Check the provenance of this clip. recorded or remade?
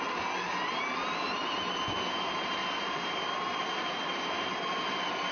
recorded